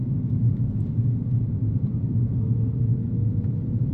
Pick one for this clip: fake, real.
fake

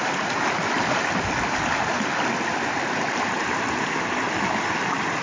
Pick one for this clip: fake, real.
real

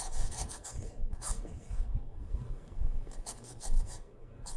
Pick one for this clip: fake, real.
fake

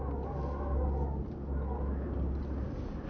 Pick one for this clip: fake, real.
real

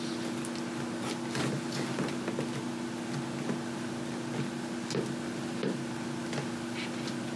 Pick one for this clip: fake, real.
real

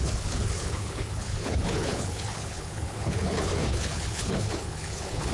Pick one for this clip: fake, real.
fake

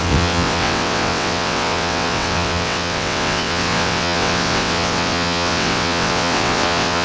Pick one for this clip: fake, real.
fake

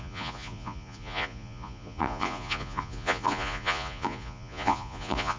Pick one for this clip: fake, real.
fake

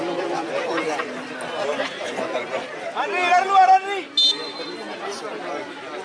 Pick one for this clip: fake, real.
real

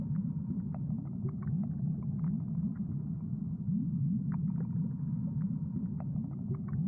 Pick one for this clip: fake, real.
real